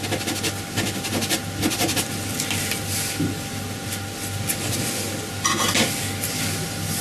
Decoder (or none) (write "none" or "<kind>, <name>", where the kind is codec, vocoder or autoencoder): none